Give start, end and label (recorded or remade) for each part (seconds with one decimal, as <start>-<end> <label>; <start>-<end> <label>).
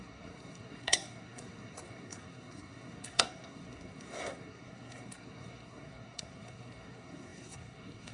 0.0-8.1 remade